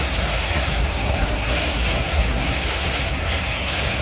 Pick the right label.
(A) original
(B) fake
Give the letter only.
B